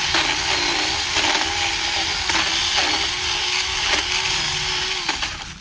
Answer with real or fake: real